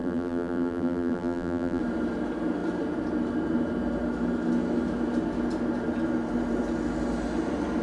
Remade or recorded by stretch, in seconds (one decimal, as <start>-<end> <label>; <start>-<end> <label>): 0.0-1.8 remade; 1.8-7.8 recorded